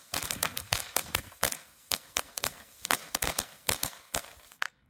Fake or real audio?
fake